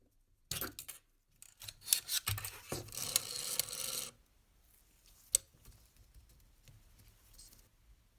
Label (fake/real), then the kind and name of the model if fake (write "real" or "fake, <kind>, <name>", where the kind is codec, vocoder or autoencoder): real